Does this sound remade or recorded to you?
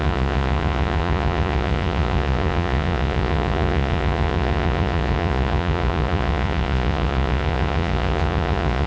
remade